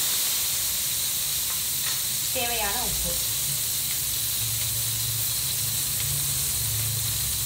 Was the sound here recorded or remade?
recorded